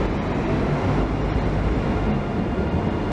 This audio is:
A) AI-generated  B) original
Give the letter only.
B